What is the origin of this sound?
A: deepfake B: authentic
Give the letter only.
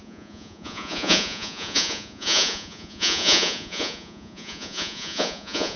A